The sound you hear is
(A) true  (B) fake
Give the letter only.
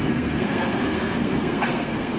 B